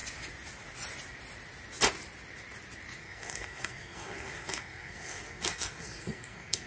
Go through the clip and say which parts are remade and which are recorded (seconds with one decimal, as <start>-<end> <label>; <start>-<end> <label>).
0.0-3.0 recorded; 3.0-6.7 remade